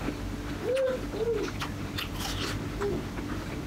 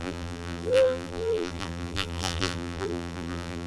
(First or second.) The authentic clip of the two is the first